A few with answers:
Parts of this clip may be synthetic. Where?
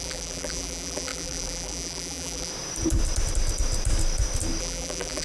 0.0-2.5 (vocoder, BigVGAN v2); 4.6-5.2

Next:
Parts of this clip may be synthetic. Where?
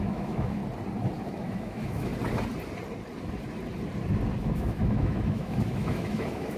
0.0-0.6 (autoencoder, DAC-VAE); 1.2-2.1; 4.4-6.6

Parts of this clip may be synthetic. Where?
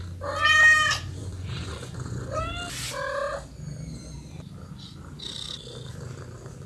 1.2-2.4 (vocoder, Vocos)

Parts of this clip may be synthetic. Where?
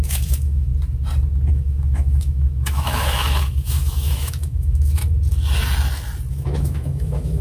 0.0-0.7 (autoencoder, DAC-VAE); 1.5-5.0; 6.3-7.4